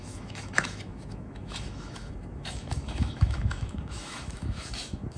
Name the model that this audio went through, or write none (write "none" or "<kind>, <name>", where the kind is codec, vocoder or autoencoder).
autoencoder, DAC-VAE